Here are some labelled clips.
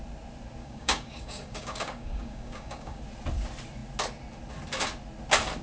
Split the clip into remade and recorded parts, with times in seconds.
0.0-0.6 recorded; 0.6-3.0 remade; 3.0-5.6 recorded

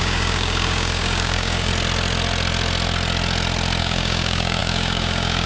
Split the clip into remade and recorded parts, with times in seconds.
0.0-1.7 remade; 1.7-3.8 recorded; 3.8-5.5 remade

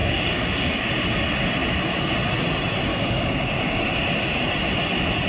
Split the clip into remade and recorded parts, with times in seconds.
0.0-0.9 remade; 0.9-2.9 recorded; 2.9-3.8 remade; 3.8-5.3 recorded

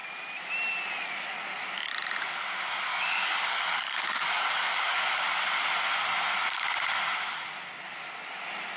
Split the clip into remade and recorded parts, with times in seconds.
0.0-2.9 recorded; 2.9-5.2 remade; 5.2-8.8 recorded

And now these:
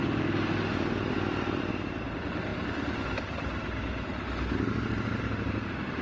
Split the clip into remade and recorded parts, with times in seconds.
0.0-6.0 recorded

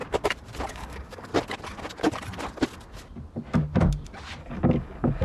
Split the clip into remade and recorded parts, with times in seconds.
0.0-0.7 recorded; 0.7-1.3 remade; 1.3-4.4 recorded; 4.4-5.2 remade

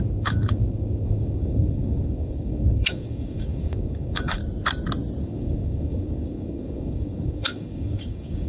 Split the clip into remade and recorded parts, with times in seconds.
0.0-4.4 remade; 4.4-5.2 recorded; 5.2-8.5 remade

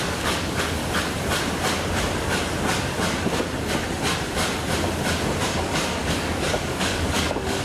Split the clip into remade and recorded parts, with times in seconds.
0.0-0.8 remade; 0.8-5.4 recorded; 5.4-7.6 remade